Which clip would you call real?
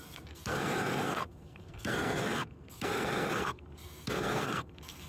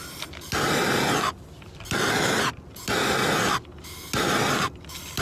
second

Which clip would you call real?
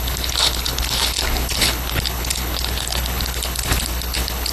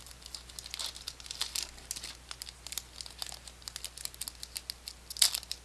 second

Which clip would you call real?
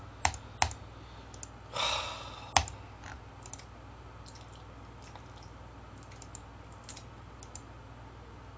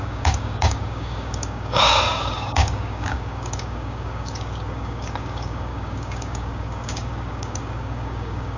first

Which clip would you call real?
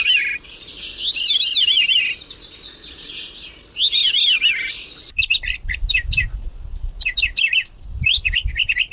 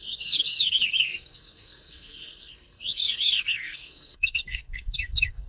first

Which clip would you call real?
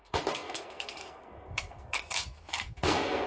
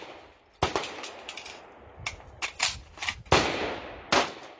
second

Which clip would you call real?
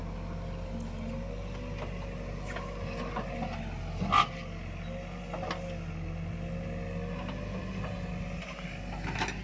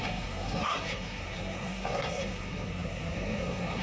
first